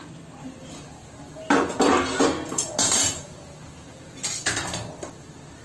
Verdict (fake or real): real